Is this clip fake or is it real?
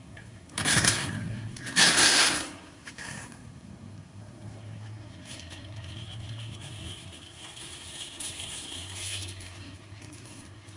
fake